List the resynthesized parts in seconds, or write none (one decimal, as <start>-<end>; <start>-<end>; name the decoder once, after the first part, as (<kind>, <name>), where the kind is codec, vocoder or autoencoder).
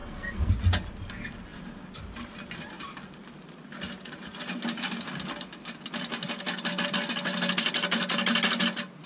0.0-0.5 (codec, SNAC)